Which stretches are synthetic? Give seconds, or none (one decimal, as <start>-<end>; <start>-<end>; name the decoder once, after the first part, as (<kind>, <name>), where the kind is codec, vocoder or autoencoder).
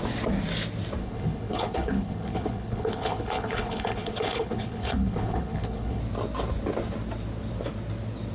1.0-6.0 (codec, HILCodec)